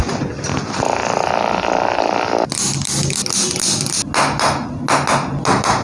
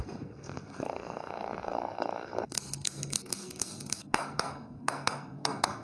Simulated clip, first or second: second